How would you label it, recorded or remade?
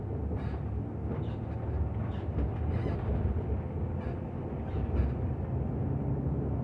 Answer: recorded